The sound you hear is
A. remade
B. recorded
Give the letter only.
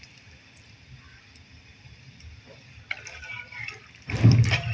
B